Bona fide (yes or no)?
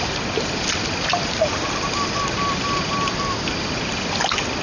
yes